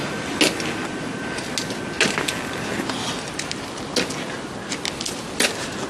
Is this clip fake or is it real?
real